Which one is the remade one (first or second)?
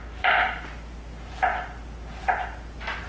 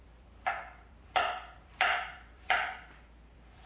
second